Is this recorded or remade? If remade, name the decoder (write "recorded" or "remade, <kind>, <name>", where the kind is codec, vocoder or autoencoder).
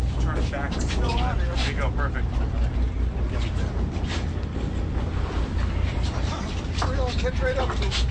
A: recorded